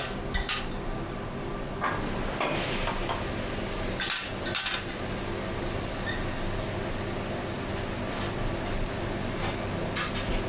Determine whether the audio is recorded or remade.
recorded